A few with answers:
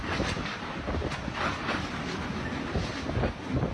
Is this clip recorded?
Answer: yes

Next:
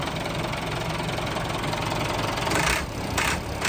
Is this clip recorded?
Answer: no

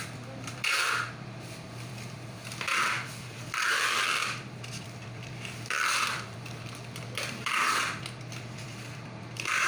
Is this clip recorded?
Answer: no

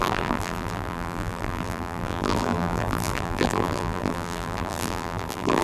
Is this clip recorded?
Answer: no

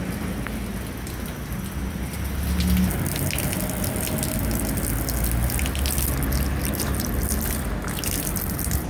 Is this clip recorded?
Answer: yes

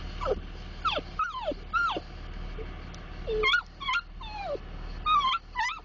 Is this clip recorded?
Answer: yes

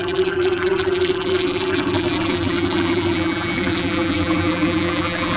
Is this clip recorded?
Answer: no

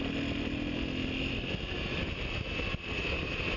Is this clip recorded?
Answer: yes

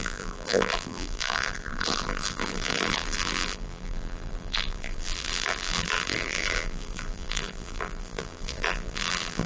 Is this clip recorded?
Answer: no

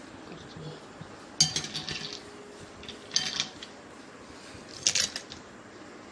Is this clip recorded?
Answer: yes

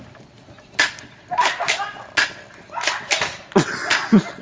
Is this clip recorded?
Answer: yes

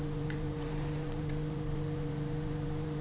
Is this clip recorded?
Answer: no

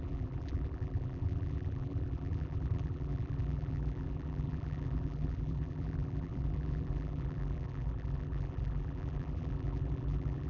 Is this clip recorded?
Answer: no